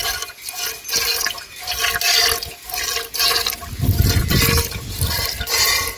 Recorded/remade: recorded